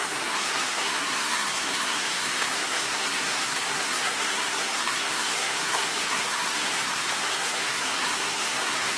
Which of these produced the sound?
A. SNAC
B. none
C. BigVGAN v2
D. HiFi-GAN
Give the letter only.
A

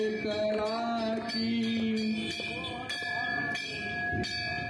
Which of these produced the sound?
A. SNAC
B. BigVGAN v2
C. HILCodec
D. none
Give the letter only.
D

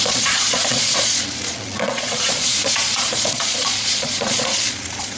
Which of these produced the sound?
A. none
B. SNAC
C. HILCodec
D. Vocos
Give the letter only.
D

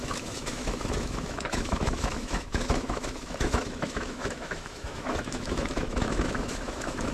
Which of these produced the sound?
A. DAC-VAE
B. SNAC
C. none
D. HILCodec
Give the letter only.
A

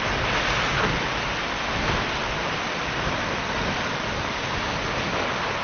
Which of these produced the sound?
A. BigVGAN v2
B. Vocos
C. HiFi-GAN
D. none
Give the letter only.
D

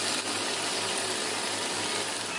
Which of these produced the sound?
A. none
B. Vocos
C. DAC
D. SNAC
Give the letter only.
A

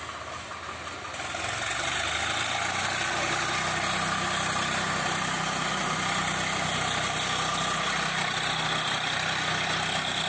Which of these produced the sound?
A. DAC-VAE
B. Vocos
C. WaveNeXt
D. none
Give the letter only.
D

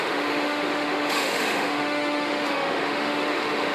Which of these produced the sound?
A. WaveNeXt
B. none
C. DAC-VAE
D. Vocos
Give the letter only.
C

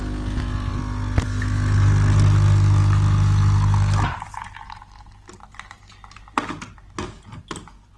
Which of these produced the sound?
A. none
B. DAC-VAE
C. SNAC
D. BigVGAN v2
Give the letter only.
A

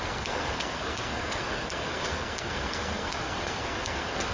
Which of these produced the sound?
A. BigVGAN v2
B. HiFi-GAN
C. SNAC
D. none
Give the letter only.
C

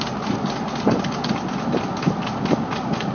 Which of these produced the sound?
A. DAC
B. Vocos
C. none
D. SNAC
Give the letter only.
C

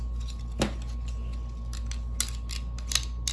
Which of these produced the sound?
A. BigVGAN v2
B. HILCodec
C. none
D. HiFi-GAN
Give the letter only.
C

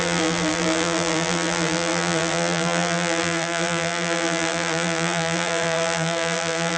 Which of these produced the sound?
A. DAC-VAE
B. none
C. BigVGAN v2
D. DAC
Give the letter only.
C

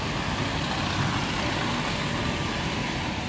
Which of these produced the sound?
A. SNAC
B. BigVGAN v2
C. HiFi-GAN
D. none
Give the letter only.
D